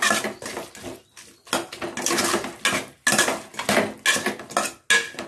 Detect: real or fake real